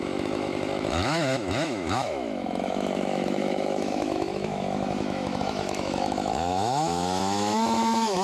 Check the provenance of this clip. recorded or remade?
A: remade